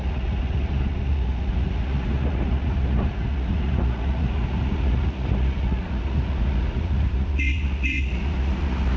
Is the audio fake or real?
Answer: fake